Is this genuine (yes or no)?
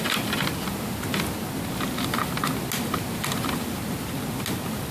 yes